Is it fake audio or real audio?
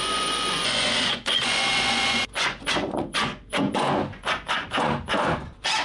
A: fake